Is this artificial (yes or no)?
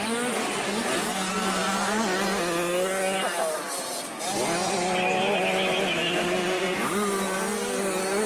no